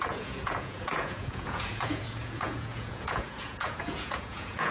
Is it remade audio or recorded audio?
remade